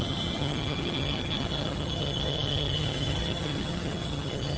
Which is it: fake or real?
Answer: fake